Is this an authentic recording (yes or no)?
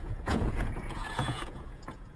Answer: no